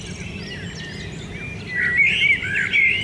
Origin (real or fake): real